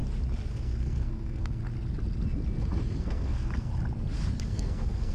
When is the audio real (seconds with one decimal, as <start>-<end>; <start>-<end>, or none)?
0.0-0.5; 1.6-3.0; 3.7-4.4